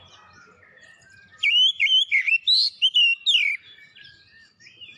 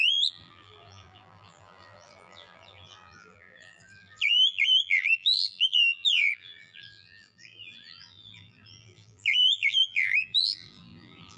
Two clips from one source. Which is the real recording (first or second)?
first